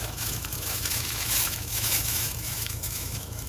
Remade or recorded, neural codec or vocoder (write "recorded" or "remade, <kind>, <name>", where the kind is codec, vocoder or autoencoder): remade, autoencoder, DAC-VAE